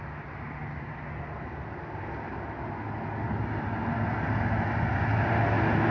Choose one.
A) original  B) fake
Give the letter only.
A